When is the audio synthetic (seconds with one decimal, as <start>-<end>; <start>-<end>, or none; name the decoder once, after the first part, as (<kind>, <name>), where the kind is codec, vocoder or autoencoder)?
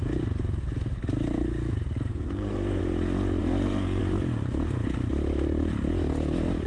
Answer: 2.1-2.8 (codec, SNAC); 3.4-4.0